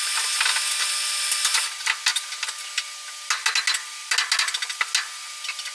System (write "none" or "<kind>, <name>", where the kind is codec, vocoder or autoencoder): none